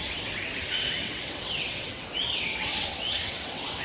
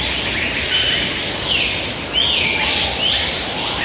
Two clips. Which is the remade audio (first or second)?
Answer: first